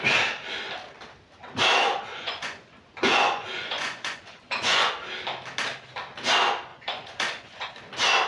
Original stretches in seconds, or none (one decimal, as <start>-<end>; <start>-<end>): 0.0-2.1; 4.9-6.7; 7.7-8.3

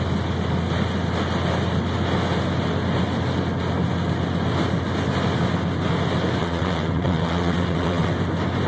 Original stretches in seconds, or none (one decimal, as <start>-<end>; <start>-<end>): 0.0-6.4; 8.1-8.7

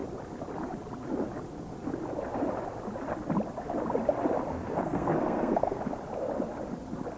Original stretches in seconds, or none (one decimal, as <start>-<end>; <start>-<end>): 0.0-4.5; 5.8-7.2

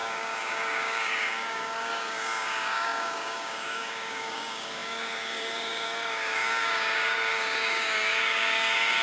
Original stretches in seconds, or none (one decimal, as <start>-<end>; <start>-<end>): none

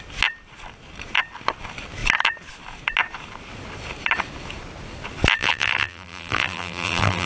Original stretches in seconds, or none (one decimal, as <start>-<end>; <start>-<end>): 0.0-5.4